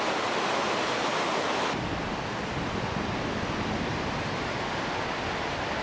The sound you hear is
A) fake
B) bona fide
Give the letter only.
B